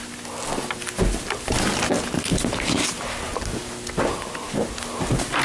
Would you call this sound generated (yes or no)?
no